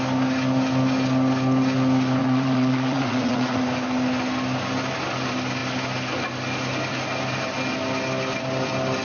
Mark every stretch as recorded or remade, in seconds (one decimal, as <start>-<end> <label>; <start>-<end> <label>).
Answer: 0.0-2.2 recorded; 2.2-3.6 remade; 3.6-9.0 recorded